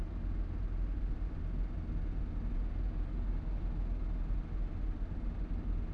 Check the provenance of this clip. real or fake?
real